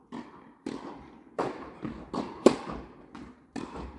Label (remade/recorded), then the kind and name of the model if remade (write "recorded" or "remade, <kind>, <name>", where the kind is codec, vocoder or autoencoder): recorded